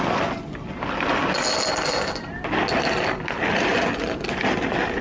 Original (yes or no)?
yes